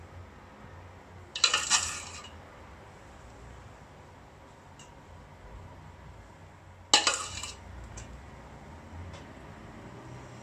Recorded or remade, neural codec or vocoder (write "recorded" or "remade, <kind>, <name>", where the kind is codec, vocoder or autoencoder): recorded